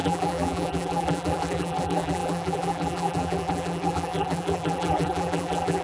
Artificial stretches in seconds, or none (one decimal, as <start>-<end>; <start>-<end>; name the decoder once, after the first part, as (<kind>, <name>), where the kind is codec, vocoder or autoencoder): 0.0-5.8 (vocoder, BigVGAN v2)